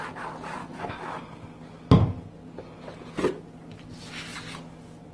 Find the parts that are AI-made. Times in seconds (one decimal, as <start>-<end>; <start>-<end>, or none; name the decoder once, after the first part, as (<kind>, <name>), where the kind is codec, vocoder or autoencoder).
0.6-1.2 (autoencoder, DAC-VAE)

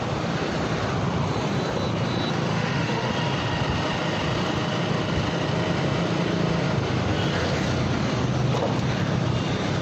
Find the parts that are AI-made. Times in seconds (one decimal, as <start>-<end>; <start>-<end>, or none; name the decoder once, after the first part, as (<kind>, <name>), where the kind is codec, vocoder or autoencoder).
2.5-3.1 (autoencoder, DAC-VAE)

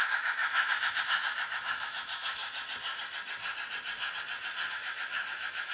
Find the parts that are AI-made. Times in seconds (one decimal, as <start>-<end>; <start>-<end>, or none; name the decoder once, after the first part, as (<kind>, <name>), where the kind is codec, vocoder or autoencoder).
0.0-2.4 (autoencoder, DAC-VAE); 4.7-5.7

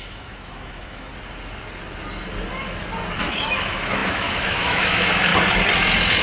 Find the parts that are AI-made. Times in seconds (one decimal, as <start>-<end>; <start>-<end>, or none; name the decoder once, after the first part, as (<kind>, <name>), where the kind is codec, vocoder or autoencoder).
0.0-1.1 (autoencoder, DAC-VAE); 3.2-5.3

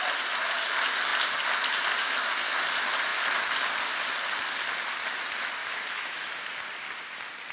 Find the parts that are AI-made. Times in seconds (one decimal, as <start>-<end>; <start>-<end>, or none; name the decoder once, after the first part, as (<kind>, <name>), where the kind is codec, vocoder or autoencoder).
5.6-6.3 (autoencoder, DAC-VAE)

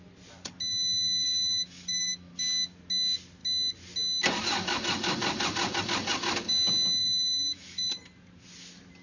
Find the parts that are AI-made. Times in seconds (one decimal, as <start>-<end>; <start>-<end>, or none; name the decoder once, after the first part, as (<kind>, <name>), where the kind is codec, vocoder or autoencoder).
0.7-2.3 (autoencoder, DAC-VAE); 7.0-7.9

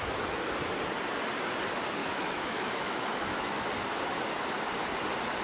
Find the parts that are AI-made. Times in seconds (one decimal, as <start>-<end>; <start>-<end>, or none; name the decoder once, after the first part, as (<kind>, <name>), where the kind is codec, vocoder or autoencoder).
2.0-3.7 (autoencoder, DAC-VAE)

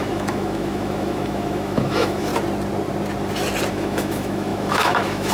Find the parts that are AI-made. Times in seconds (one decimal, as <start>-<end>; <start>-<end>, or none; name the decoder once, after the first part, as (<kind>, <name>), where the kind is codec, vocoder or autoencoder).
0.0-2.3 (autoencoder, DAC-VAE); 3.7-5.3